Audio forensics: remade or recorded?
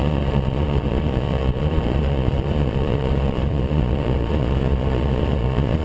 remade